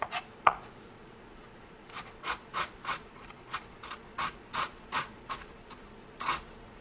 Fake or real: fake